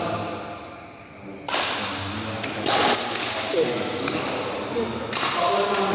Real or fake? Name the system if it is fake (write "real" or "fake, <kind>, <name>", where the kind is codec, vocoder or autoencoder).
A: real